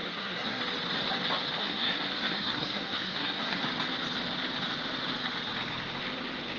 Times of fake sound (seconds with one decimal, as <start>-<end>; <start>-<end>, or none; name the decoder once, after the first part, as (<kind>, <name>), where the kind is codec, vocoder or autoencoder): 0.0-0.6 (codec, SNAC); 1.6-3.6